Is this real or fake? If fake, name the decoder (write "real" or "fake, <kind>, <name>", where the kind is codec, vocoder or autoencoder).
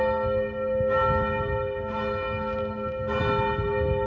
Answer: real